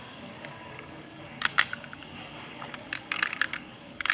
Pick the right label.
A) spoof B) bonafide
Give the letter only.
A